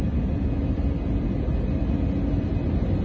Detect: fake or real real